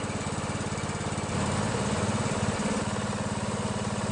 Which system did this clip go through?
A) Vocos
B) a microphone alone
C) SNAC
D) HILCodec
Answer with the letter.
B